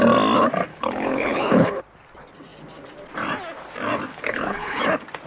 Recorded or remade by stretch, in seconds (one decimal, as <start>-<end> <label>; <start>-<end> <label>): 0.0-0.7 recorded; 0.7-1.8 remade; 1.8-4.1 recorded; 4.1-4.8 remade; 4.8-5.3 recorded